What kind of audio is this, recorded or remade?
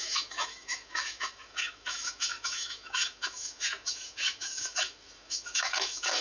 remade